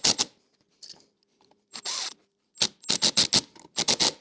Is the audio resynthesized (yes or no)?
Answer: no